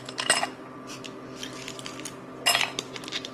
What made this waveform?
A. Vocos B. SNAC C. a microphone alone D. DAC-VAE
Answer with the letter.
C